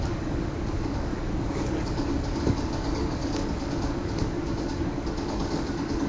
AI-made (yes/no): yes